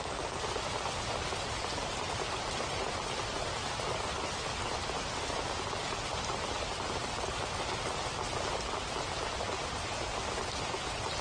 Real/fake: real